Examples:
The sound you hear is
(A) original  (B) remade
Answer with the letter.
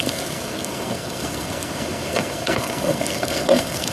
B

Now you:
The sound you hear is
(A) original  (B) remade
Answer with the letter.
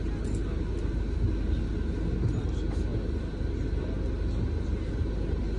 A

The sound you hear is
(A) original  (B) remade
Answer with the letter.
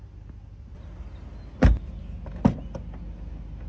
A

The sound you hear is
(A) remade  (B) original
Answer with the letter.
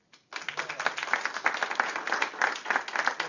B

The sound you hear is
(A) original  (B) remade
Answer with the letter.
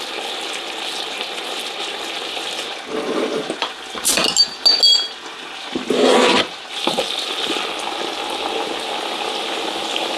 A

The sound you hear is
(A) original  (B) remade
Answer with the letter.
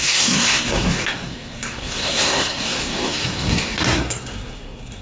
B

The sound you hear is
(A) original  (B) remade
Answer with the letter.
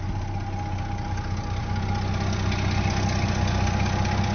A